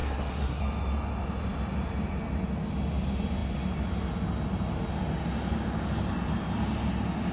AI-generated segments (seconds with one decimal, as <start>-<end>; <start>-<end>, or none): 0.0-0.6